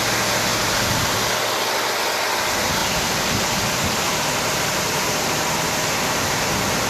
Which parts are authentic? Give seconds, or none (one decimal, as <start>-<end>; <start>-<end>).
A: 0.0-0.5; 1.1-2.8; 6.5-6.9